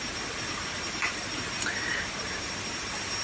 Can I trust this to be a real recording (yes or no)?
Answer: yes